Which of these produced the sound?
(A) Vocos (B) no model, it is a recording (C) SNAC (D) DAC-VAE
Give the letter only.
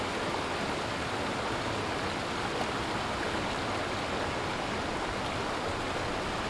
B